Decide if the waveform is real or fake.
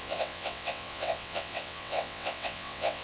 fake